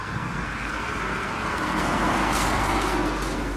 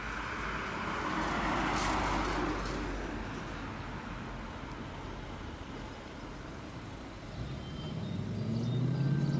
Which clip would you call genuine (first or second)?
second